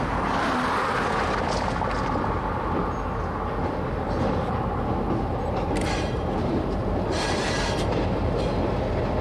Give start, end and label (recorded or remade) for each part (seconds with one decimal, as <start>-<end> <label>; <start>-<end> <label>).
0.0-5.3 recorded; 5.3-8.7 remade; 8.7-9.2 recorded